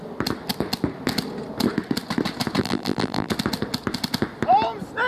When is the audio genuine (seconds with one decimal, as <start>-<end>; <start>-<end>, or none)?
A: 0.0-2.6; 3.3-5.1